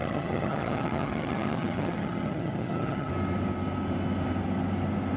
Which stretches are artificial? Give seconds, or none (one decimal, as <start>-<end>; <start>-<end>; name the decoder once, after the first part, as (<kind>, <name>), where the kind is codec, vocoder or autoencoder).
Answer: 0.0-3.1 (vocoder, HiFi-GAN)